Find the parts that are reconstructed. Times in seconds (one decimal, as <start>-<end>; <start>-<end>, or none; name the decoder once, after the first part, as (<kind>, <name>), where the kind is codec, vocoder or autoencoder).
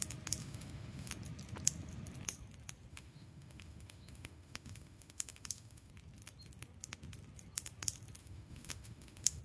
0.4-1.1 (autoencoder, DAC-VAE); 2.9-5.9; 8.2-9.4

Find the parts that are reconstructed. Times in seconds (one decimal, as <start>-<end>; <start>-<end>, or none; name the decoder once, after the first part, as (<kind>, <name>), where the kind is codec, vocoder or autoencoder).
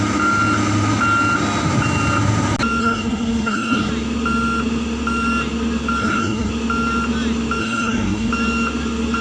2.8-3.9 (codec, SNAC); 6.0-6.5; 7.6-8.3